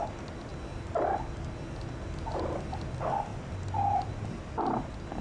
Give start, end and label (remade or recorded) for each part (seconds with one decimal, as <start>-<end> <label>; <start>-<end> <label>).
0.0-5.2 recorded